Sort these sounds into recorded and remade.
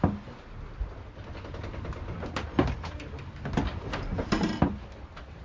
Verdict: recorded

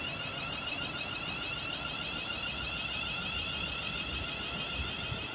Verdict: recorded